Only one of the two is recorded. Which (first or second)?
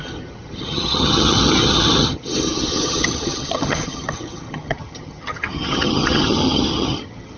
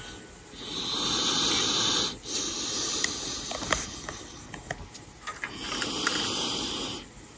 second